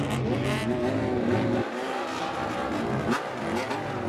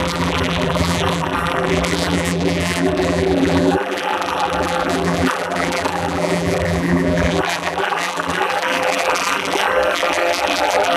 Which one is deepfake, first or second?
second